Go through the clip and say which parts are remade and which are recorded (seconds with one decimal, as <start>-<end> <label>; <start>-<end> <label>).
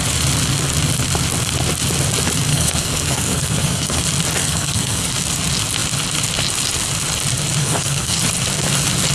0.0-2.5 recorded; 2.5-4.0 remade; 4.0-4.4 recorded; 4.4-5.1 remade; 5.1-7.6 recorded; 7.6-8.2 remade; 8.2-9.1 recorded